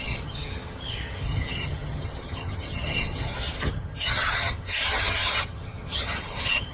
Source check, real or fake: fake